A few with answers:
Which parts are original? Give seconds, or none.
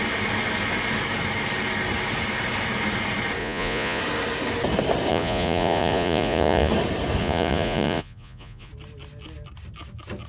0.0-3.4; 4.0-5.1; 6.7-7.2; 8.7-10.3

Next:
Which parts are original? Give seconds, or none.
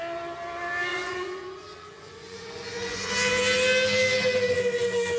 0.0-0.9; 3.1-5.2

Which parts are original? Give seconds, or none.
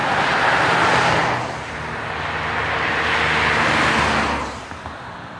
0.0-5.4